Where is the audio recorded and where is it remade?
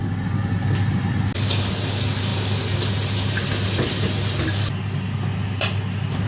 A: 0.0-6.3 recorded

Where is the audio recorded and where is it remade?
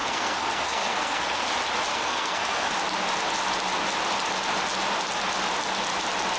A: 0.0-1.4 remade; 1.4-1.9 recorded; 1.9-2.7 remade; 2.7-6.4 recorded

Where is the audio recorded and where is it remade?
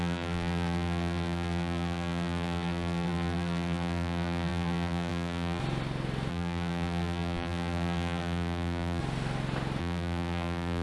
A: 0.0-5.6 remade; 5.6-6.3 recorded; 6.3-9.0 remade; 9.0-9.8 recorded; 9.8-10.8 remade